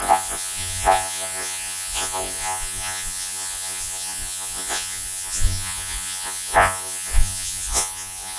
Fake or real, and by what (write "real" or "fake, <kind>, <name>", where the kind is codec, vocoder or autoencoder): fake, vocoder, Vocos